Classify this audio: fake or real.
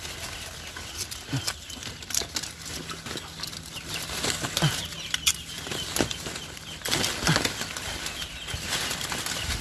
real